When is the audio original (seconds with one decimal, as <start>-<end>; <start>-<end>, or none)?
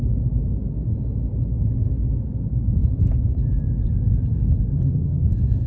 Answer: 0.0-4.7; 5.2-5.7